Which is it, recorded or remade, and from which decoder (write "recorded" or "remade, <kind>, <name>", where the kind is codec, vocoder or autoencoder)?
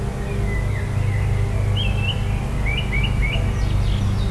recorded